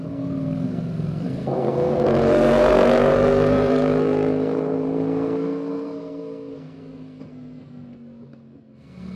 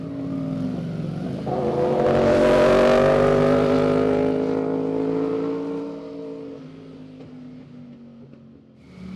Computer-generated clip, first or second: first